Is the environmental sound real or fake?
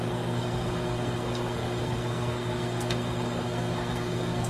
fake